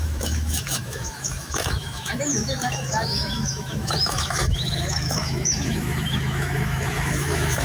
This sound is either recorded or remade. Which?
remade